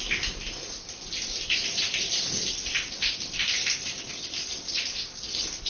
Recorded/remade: recorded